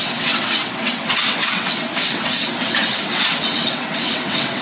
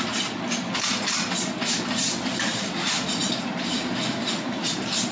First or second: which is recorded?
second